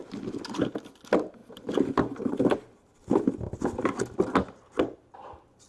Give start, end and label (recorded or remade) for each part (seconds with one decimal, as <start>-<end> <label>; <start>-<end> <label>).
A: 0.0-5.7 recorded